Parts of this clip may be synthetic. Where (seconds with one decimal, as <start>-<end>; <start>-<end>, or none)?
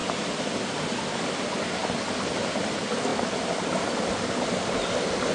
0.0-0.9; 3.1-3.6